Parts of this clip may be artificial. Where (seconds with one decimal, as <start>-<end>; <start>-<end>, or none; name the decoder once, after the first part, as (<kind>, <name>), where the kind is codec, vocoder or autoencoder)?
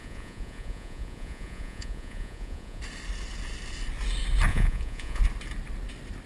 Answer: 0.0-2.8 (vocoder, Vocos); 4.5-5.2